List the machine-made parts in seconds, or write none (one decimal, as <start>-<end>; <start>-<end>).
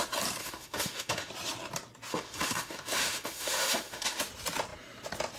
0.4-1.3; 2.1-4.2